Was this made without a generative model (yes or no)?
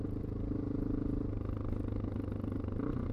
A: yes